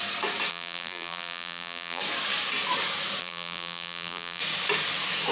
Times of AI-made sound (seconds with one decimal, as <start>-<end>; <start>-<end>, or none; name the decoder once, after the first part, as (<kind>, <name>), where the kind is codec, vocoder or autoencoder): 0.5-2.0 (vocoder, BigVGAN v2); 3.2-4.4